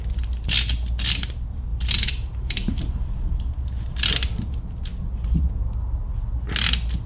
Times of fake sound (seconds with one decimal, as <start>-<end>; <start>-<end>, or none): 1.7-4.1